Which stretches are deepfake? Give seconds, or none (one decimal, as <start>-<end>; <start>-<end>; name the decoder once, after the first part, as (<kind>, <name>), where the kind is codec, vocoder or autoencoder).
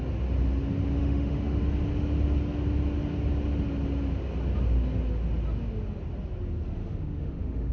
1.0-1.6 (autoencoder, DAC-VAE); 6.8-7.7